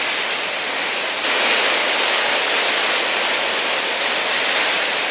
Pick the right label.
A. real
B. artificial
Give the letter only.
A